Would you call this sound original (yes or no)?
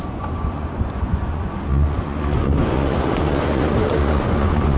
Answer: no